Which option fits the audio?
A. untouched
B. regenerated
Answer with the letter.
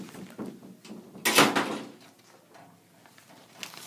A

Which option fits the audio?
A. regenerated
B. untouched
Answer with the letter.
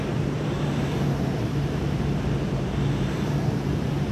A